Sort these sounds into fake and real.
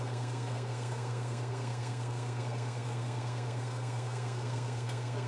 fake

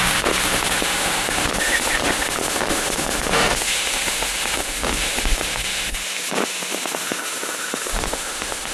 fake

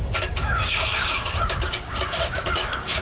fake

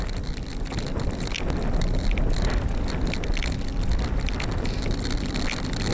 real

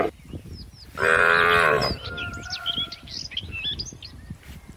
real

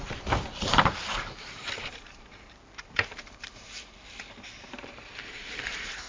fake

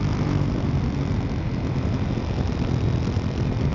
real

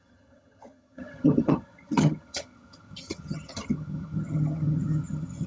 fake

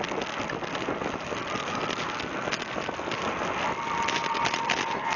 real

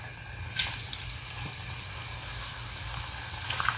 real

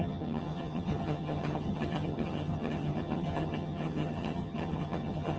fake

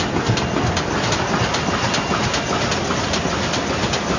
real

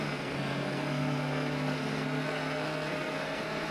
fake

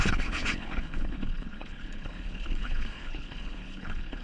fake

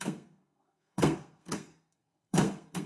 fake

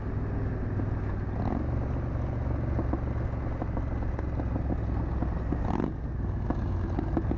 real